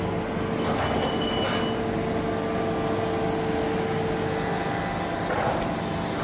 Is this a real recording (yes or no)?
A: yes